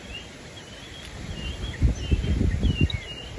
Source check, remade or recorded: recorded